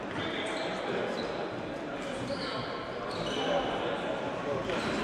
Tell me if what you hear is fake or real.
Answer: real